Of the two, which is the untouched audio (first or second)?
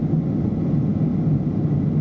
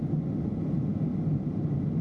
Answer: first